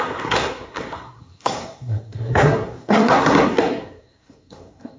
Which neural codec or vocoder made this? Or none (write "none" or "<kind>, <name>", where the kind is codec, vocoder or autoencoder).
codec, SNAC